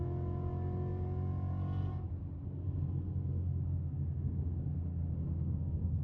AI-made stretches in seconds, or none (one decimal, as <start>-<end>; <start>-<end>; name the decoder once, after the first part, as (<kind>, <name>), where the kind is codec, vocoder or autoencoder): 2.6-6.0 (codec, SNAC)